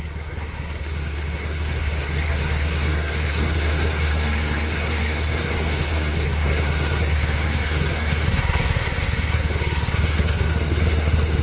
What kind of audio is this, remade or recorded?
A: remade